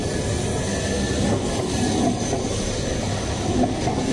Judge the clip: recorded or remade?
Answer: recorded